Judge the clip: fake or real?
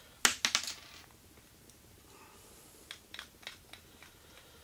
real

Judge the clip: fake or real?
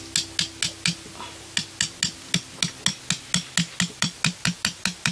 real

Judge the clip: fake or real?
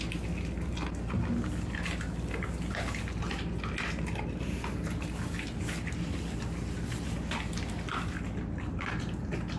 real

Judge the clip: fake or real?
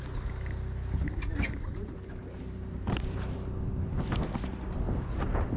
real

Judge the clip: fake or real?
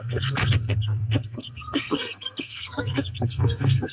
fake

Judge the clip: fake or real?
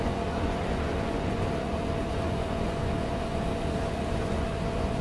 fake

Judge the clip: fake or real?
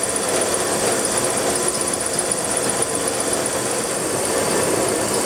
real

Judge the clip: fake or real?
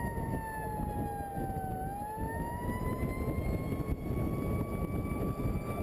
real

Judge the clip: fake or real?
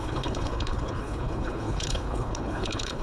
fake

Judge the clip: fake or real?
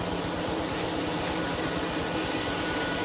real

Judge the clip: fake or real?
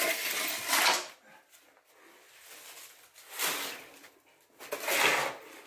real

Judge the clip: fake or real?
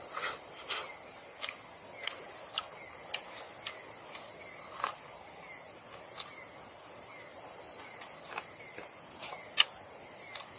real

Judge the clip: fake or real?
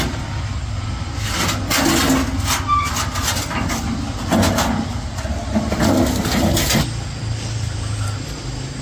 real